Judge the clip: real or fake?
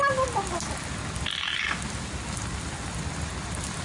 real